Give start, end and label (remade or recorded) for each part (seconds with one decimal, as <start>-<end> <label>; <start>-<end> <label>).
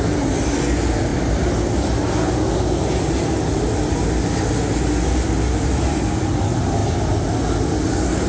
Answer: 0.0-8.3 recorded